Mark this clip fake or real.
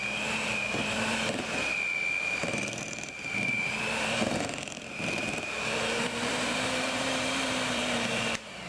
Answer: fake